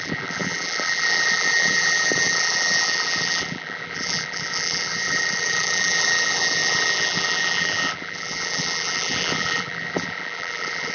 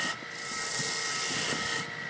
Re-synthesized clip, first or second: first